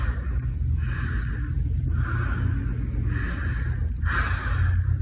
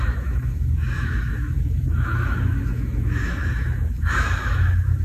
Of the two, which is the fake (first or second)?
second